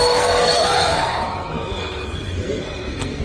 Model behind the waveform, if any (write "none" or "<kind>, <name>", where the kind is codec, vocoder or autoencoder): codec, SNAC